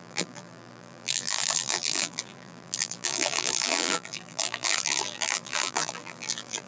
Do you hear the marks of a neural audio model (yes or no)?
yes